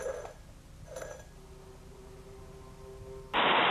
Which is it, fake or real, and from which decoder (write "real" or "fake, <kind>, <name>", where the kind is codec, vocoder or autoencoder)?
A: real